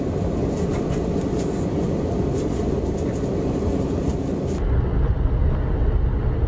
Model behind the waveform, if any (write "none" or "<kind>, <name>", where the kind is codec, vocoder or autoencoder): none